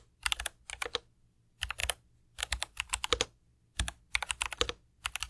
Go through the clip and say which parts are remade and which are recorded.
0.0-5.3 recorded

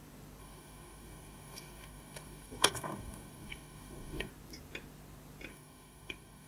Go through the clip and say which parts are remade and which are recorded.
0.0-0.4 recorded; 0.4-4.3 remade; 4.3-5.5 recorded; 5.5-6.5 remade

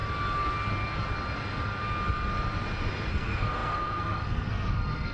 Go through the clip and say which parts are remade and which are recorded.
0.0-3.1 recorded; 3.1-5.1 remade

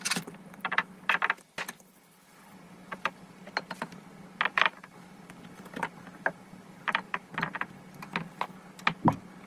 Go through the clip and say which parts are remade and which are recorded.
0.0-2.3 recorded; 2.3-3.4 remade; 3.4-4.5 recorded; 4.5-7.3 remade; 7.3-9.5 recorded

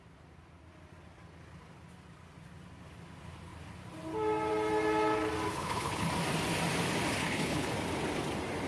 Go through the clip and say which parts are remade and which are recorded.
0.0-5.5 recorded; 5.5-6.1 remade; 6.1-7.2 recorded; 7.2-7.7 remade; 7.7-8.7 recorded

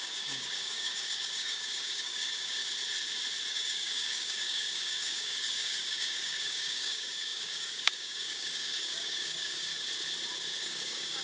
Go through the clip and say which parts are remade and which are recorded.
0.0-2.6 remade; 2.6-3.5 recorded; 3.5-9.7 remade; 9.7-10.6 recorded; 10.6-11.2 remade